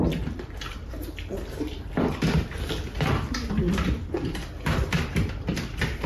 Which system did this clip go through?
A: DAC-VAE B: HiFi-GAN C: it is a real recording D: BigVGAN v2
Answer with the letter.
D